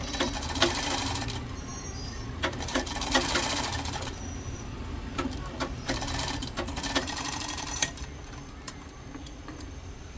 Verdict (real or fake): fake